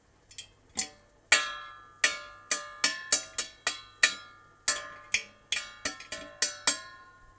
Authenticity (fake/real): real